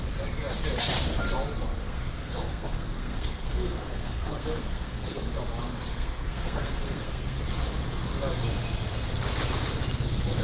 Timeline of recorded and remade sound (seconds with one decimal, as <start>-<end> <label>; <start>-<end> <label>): 0.0-1.7 recorded; 1.7-5.3 remade; 5.3-5.9 recorded; 5.9-7.4 remade; 7.4-10.4 recorded